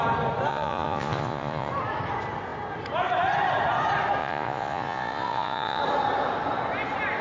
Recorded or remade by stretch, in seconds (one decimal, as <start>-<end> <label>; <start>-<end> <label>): 0.0-0.5 recorded; 0.5-1.7 remade; 1.7-4.2 recorded; 4.2-5.8 remade; 5.8-7.2 recorded